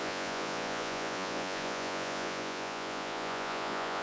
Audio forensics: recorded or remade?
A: remade